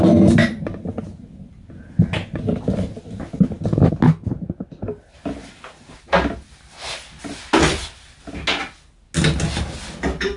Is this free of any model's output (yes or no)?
yes